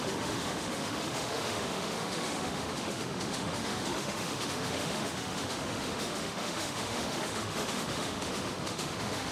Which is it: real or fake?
fake